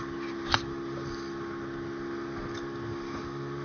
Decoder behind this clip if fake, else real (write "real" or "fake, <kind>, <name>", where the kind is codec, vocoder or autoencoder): real